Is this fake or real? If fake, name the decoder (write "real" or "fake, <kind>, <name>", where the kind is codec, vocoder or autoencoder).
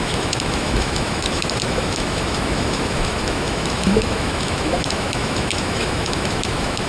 fake, autoencoder, DAC-VAE